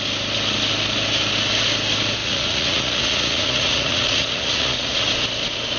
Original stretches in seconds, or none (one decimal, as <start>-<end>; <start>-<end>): 0.0-2.2; 5.1-5.8